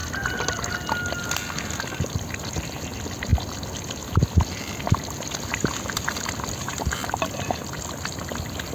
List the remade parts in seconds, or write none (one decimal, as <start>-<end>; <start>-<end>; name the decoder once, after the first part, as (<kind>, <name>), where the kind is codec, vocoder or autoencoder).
none